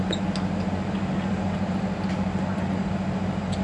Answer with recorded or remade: recorded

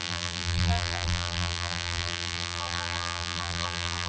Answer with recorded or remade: remade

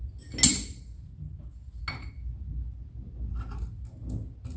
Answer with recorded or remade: recorded